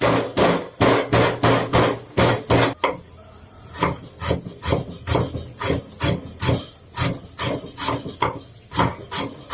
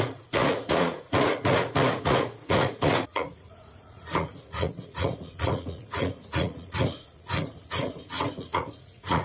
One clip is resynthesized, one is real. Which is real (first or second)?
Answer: first